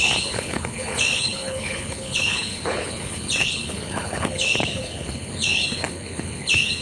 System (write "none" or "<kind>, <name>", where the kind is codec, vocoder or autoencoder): codec, HILCodec